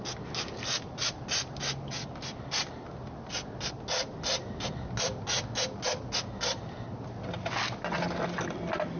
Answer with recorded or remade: recorded